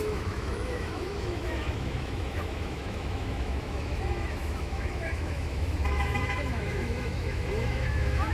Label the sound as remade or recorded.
remade